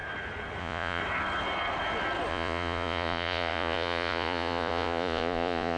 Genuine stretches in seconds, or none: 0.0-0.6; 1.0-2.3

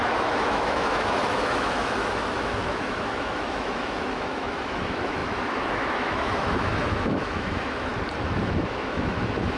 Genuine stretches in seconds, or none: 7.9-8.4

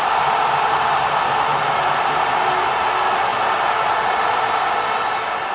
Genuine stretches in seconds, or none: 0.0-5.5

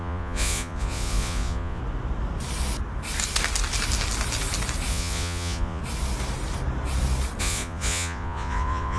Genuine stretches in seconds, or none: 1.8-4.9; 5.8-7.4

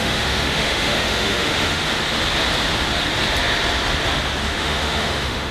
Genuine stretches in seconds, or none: 1.8-4.4

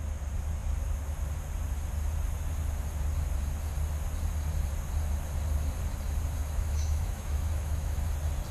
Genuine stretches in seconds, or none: 0.0-6.4; 8.0-8.5

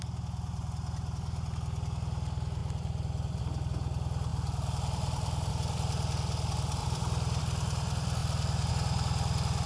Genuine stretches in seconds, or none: 0.0-4.3; 5.5-6.8; 7.4-9.7

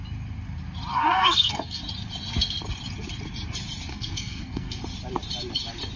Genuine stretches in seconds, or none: 0.0-0.9; 1.8-3.9; 4.8-6.0